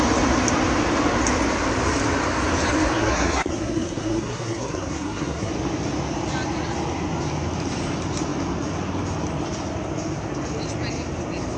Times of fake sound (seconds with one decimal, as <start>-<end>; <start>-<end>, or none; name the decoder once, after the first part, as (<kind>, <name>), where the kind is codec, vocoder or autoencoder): 3.0-5.5 (codec, SNAC)